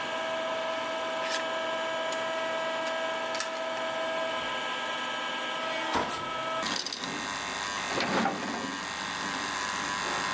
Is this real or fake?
real